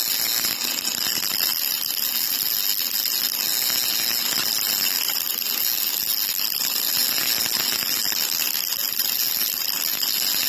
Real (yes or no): yes